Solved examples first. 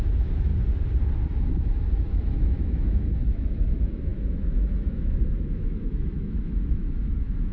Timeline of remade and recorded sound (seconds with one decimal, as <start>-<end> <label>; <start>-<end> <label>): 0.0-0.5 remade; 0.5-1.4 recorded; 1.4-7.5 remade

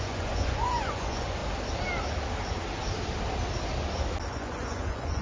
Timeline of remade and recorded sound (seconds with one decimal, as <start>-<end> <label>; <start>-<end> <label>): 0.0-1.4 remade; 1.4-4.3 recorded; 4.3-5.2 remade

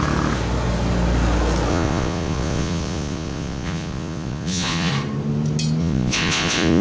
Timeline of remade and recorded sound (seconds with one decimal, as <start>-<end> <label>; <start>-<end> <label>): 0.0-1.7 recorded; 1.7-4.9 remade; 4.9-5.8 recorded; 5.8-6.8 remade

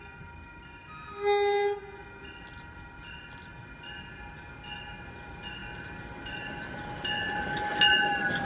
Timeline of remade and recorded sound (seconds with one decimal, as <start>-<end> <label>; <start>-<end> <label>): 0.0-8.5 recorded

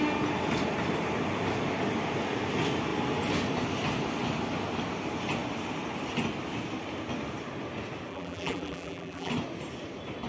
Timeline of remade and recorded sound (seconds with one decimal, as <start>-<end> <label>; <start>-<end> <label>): 0.0-8.1 recorded; 8.1-9.3 remade; 9.3-10.3 recorded